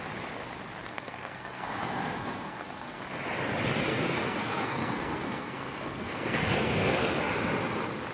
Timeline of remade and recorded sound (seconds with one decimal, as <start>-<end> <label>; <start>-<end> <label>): 0.0-0.9 recorded; 0.9-3.0 remade; 3.0-3.9 recorded; 3.9-7.3 remade; 7.3-8.1 recorded